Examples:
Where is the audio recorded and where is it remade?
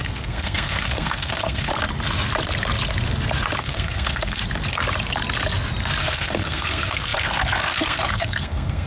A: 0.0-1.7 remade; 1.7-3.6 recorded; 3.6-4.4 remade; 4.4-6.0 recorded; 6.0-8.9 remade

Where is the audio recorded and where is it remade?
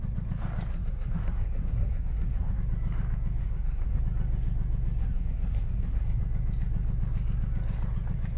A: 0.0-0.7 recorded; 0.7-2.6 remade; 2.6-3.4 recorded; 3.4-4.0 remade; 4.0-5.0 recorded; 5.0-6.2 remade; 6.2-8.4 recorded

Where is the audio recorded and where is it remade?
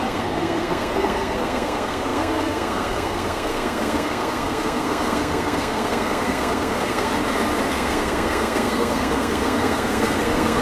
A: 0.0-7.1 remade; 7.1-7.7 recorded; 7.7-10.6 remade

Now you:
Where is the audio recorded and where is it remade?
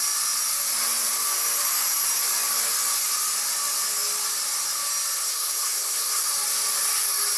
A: 0.0-5.2 recorded; 5.2-6.3 remade; 6.3-7.4 recorded